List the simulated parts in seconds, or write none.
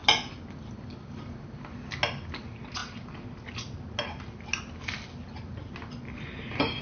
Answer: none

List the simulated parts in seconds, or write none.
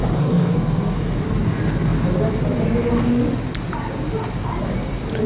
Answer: 0.0-1.2 (codec, SNAC)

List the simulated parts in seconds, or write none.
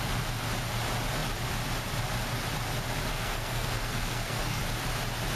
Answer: 3.1-4.6 (codec, SNAC)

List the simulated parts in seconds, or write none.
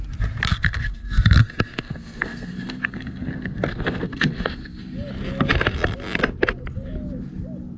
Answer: 0.5-4.8 (codec, SNAC)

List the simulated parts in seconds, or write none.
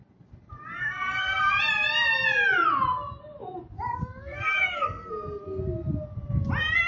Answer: 0.8-1.4 (codec, SNAC); 4.0-5.6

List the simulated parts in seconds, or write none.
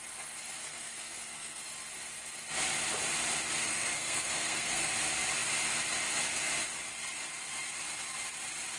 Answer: 0.6-1.6 (codec, SNAC); 3.6-4.9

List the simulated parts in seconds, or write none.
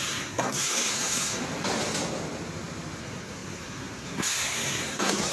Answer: 0.0-1.4 (codec, SNAC); 3.0-5.3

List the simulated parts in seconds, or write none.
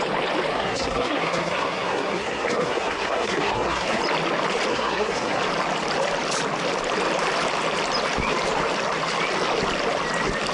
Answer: 0.5-4.0 (codec, SNAC); 4.7-5.4